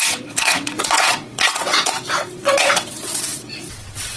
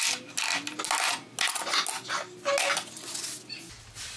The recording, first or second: second